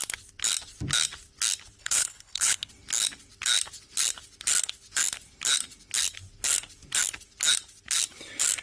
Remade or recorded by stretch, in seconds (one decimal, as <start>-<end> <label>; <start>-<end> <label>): 0.0-1.8 recorded; 1.8-2.7 remade; 2.7-8.6 recorded